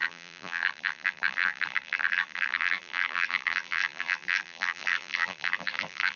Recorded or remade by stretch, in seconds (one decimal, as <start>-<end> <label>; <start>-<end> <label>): 0.0-6.2 remade